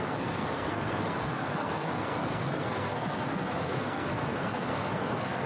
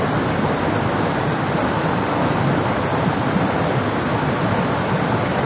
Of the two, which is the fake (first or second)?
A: first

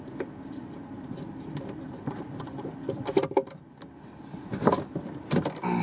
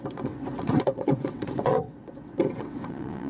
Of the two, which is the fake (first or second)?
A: second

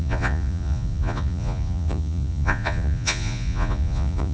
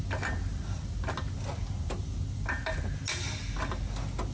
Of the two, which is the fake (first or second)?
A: first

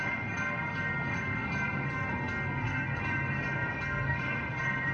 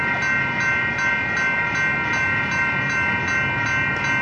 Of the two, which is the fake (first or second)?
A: first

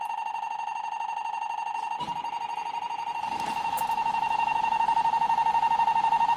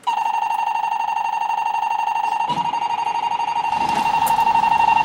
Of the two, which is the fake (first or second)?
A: first